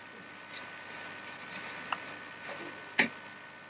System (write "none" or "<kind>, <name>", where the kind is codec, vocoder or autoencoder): none